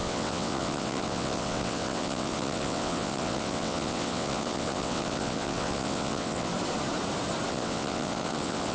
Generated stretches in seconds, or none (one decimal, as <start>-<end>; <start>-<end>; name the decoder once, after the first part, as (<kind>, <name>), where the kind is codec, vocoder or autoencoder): 0.0-6.5 (vocoder, WaveNeXt); 7.5-8.7